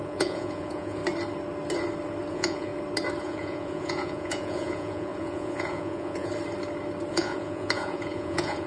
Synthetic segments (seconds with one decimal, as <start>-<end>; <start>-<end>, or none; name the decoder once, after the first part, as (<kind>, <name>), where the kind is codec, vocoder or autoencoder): 0.0-1.0 (vocoder, Vocos); 2.3-2.7; 3.2-6.3; 7.1-8.7